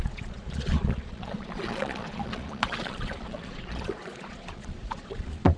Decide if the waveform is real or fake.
fake